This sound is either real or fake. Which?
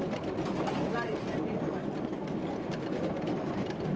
real